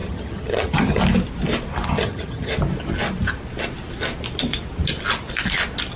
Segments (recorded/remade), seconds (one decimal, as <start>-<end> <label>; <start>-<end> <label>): 0.0-1.0 remade; 1.0-1.9 recorded; 1.9-2.5 remade; 2.5-6.0 recorded